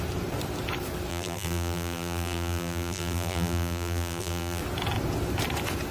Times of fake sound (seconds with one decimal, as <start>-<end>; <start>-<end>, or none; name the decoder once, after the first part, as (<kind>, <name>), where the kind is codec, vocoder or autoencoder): 1.1-4.6 (vocoder, BigVGAN v2)